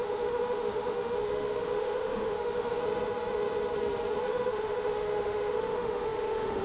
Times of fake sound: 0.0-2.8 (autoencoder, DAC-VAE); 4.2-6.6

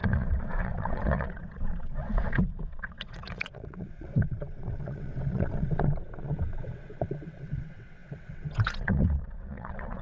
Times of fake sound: 0.0-10.0 (vocoder, WaveNeXt)

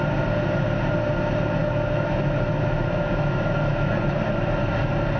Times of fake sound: 1.6-3.9 (autoencoder, DAC-VAE)

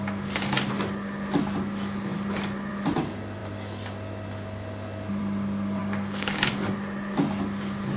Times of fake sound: 5.8-6.5 (codec, DAC)

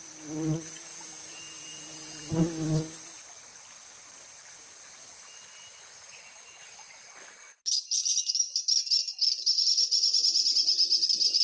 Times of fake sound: 0.9-2.3 (vocoder, Vocos)

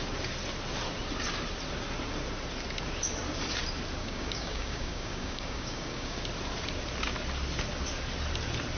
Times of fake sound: 4.0-6.2 (codec, DAC)

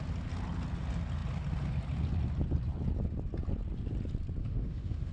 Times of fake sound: 4.4-5.1 (autoencoder, DAC-VAE)

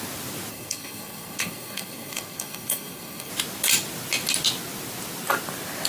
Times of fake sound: 0.5-3.3 (codec, SNAC)